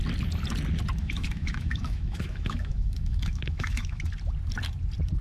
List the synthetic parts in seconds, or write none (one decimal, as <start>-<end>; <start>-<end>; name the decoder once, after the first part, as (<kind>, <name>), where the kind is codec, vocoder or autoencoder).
1.0-4.1 (autoencoder, DAC-VAE)